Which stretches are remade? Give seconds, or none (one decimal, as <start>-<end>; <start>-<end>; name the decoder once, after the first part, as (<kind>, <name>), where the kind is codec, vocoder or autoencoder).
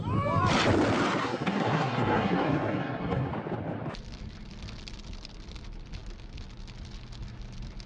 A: 1.2-3.3 (codec, SNAC)